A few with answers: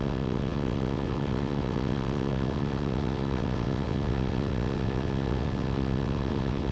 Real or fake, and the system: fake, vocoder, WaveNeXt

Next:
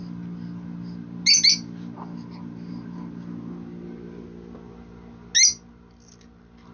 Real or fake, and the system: real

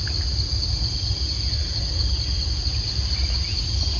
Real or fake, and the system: real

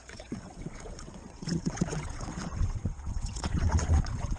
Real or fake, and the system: fake, vocoder, WaveNeXt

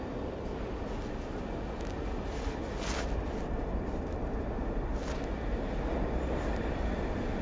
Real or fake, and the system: real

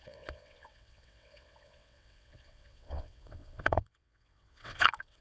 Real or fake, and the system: fake, vocoder, WaveNeXt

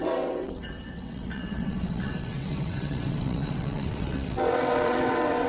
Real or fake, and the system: fake, vocoder, WaveNeXt